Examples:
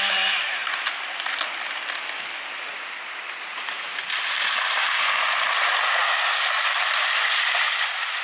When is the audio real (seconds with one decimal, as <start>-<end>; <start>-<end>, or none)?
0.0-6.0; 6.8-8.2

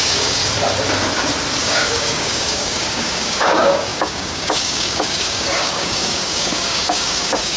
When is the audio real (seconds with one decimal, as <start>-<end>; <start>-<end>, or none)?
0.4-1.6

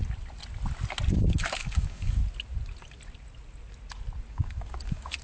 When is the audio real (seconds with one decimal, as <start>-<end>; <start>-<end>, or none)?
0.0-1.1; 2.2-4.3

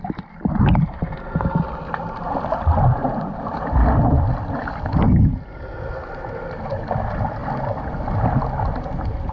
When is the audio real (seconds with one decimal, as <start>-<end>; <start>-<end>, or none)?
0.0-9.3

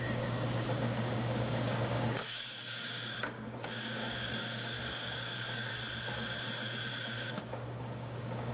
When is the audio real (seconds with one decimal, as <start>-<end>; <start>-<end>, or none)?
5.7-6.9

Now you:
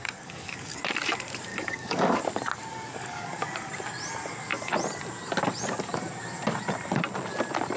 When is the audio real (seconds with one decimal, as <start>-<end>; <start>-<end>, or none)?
0.8-1.5; 2.2-2.7; 3.7-7.8

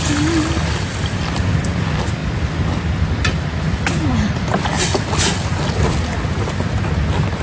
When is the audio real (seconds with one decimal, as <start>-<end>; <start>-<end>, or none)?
0.0-7.4

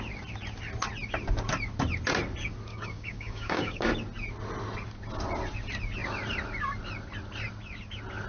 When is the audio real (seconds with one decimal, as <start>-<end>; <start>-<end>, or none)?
0.0-2.7; 3.9-8.3